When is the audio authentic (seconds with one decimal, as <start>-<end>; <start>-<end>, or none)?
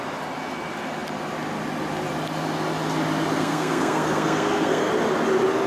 0.0-3.3; 4.9-5.7